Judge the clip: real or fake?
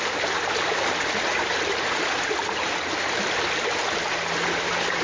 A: real